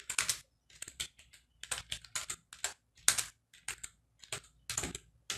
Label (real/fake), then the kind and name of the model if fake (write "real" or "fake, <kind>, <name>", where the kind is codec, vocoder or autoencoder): real